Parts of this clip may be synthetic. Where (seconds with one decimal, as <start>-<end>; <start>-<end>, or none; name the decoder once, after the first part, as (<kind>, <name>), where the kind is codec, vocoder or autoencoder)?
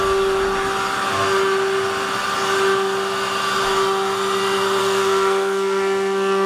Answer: 4.8-6.5 (codec, SNAC)